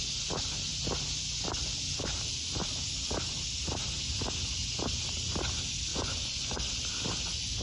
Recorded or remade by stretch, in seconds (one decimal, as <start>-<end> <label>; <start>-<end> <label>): 0.0-5.9 recorded; 5.9-6.7 remade; 6.7-7.6 recorded